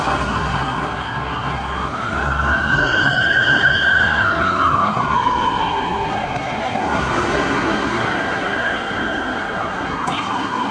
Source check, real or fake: fake